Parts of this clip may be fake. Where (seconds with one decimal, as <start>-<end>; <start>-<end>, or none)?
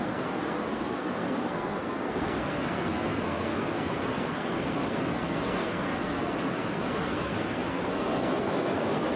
0.0-9.2